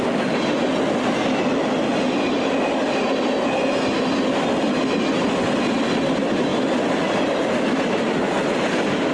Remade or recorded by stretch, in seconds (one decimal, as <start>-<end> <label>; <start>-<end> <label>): 0.0-9.1 recorded